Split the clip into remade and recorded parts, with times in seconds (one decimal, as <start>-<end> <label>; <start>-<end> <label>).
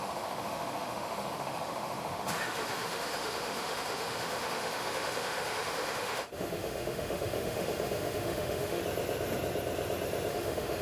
0.0-8.8 remade; 8.8-10.3 recorded; 10.3-10.8 remade